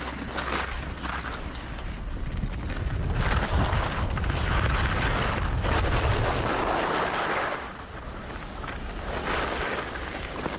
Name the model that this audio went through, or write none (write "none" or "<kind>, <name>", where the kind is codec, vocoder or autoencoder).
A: none